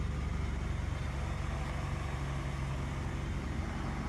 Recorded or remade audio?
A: recorded